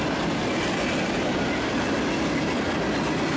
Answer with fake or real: real